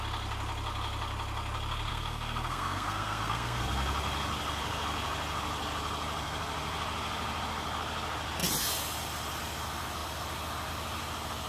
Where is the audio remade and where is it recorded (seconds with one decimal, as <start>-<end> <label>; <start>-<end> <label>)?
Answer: 0.0-1.9 recorded; 1.9-3.6 remade; 3.6-11.5 recorded

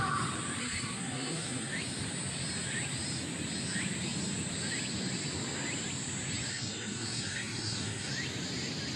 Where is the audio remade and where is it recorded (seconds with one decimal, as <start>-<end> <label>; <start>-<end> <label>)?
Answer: 0.0-0.6 recorded; 0.6-1.7 remade; 1.7-6.5 recorded; 6.5-8.1 remade; 8.1-9.0 recorded

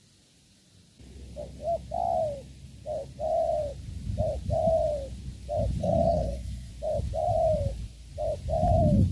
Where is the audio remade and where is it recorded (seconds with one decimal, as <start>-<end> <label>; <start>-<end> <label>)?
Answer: 0.0-5.8 recorded; 5.8-6.7 remade; 6.7-9.1 recorded

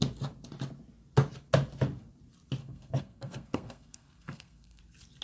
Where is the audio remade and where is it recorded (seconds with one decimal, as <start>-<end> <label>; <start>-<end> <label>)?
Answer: 0.0-2.6 recorded; 2.6-4.8 remade; 4.8-5.2 recorded

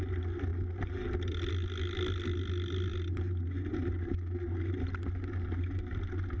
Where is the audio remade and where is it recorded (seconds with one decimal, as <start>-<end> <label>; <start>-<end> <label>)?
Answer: 0.0-6.4 recorded